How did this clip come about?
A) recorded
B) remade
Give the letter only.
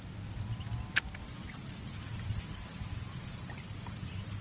A